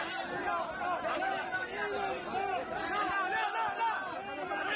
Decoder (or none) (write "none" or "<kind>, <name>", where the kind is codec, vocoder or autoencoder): none